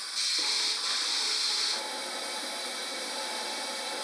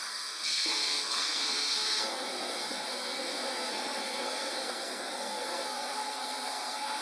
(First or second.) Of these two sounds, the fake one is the second